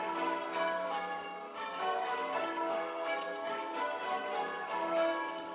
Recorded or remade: remade